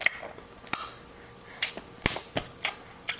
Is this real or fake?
real